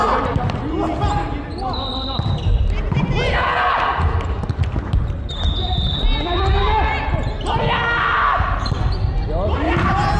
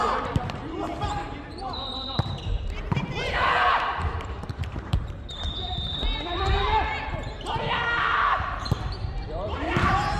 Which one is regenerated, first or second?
second